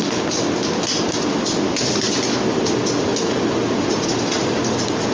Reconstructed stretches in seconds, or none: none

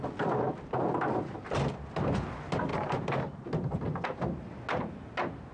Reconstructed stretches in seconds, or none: 2.7-3.5 (vocoder, BigVGAN v2)

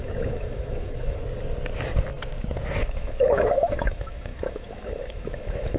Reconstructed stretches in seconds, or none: 0.0-1.2 (autoencoder, DAC-VAE); 2.8-5.8

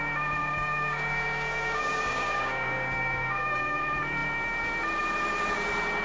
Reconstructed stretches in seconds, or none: 0.4-3.8 (codec, DAC)

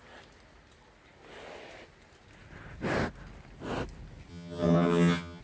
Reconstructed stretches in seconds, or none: 4.3-5.4 (vocoder, HiFi-GAN)